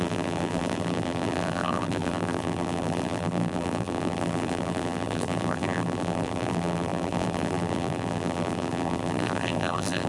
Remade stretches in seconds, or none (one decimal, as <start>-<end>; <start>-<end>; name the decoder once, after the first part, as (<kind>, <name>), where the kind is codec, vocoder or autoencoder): 0.0-10.1 (vocoder, BigVGAN v2)